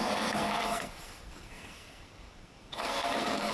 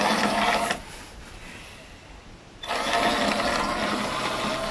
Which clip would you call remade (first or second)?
first